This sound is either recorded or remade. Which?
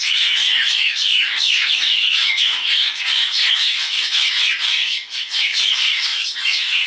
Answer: remade